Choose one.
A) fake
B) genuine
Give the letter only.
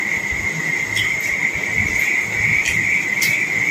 B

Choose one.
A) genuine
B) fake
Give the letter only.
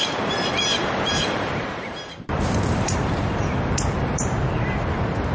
B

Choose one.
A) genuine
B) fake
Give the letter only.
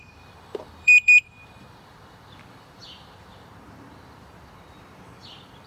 B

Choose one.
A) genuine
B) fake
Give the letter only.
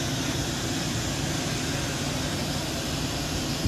B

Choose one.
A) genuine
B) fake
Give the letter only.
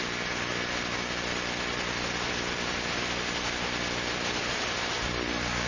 A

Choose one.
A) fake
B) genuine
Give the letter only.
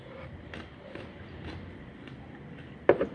A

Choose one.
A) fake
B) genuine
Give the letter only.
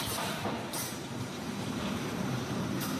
A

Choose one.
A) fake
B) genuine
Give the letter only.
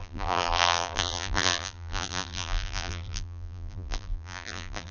A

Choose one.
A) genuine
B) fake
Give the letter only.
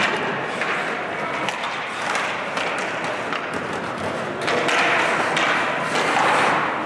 A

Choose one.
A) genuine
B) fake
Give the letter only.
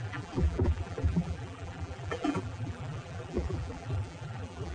B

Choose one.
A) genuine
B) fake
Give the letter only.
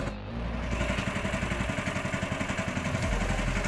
A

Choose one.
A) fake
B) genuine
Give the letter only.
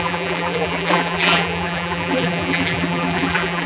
A